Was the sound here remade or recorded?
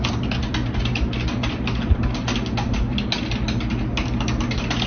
recorded